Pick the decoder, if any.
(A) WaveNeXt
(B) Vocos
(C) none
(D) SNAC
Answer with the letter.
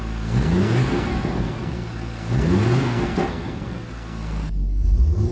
D